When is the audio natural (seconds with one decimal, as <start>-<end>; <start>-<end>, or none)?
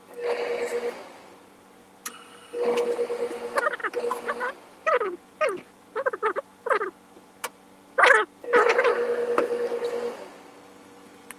0.0-11.4